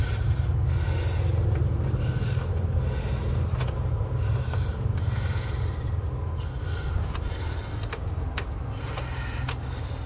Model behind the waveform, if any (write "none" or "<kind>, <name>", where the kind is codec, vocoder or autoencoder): none